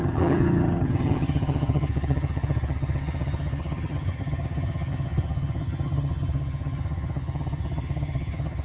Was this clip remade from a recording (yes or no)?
yes